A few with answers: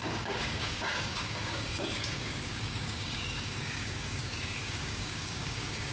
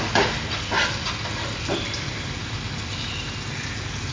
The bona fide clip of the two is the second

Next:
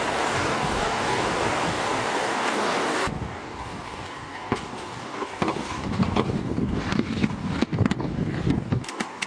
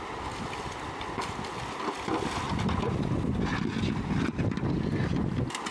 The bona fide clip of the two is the second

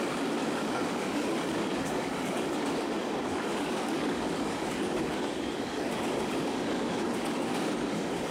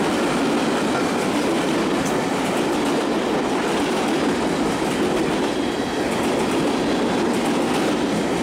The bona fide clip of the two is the second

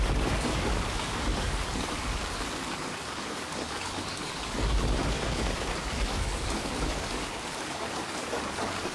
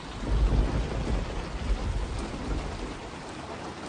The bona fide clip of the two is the second